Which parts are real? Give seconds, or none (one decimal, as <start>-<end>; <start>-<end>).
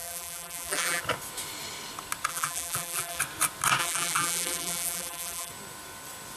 1.0-2.3; 3.2-3.8; 5.5-6.4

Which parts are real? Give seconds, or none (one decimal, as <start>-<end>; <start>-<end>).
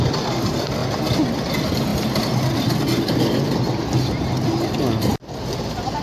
0.0-6.0